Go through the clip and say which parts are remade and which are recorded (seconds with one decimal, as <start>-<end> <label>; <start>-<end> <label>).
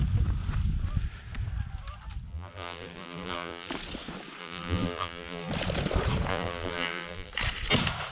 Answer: 0.0-2.3 recorded; 2.3-3.7 remade; 3.7-4.4 recorded; 4.4-5.5 remade; 5.5-6.3 recorded; 6.3-7.3 remade; 7.3-8.1 recorded